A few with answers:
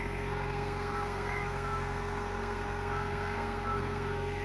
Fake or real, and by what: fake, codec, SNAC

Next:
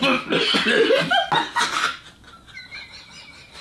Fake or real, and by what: real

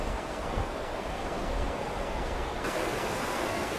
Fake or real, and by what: fake, codec, SNAC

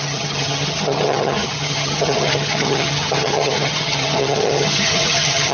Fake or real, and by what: fake, vocoder, HiFi-GAN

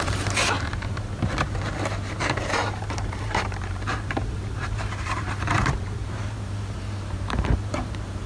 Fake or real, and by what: fake, vocoder, BigVGAN v2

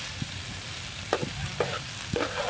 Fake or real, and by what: real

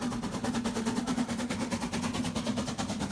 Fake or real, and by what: real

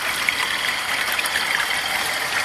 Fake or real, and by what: real